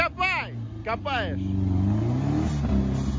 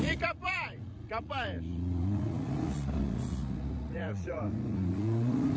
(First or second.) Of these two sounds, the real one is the first